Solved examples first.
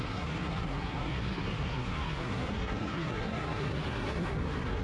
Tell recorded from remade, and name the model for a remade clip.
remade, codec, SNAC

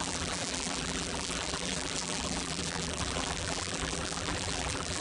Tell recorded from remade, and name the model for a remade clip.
remade, vocoder, BigVGAN v2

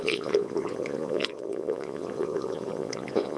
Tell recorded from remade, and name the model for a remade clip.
remade, vocoder, Vocos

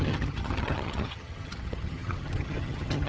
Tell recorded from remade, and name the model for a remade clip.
remade, vocoder, HiFi-GAN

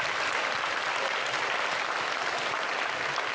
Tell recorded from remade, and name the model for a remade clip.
recorded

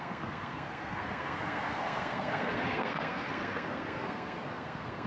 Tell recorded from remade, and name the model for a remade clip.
remade, codec, SNAC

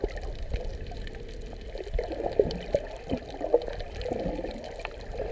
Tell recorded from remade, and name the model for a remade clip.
recorded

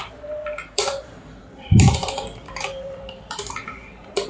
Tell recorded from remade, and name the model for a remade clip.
remade, vocoder, BigVGAN v2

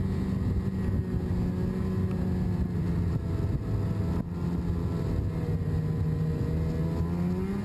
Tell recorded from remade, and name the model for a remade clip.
recorded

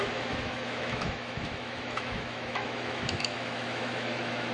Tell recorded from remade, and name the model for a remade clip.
remade, autoencoder, DAC-VAE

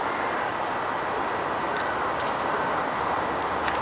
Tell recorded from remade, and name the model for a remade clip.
recorded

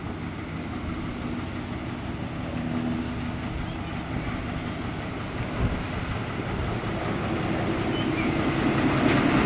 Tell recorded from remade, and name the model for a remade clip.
recorded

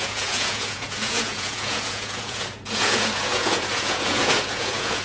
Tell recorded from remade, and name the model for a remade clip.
remade, vocoder, Vocos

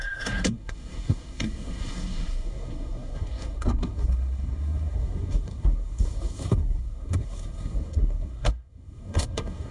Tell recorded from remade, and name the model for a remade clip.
remade, codec, SNAC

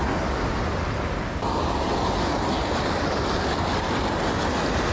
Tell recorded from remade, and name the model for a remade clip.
recorded